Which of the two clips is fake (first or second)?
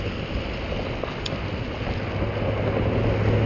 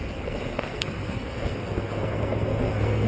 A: second